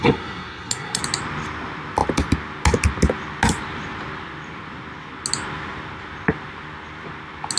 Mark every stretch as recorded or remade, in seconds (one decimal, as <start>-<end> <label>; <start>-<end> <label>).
0.0-1.0 remade; 1.0-7.6 recorded